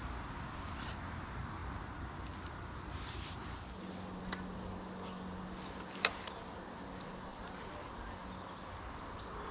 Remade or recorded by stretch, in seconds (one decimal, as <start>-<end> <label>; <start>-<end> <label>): 0.0-9.5 recorded